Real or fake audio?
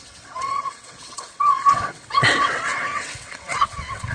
fake